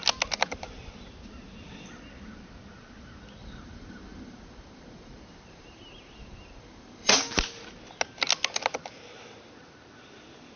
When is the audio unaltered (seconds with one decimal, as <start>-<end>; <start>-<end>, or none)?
0.0-3.4; 7.1-10.6